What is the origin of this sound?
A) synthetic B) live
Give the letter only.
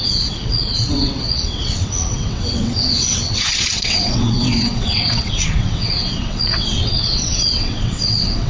A